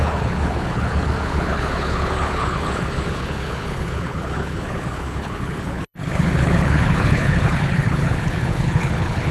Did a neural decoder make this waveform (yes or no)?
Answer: yes